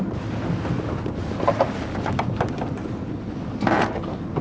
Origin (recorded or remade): recorded